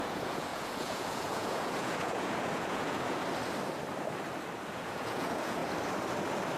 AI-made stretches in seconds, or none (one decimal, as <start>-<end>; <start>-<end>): 0.0-3.2; 4.7-5.6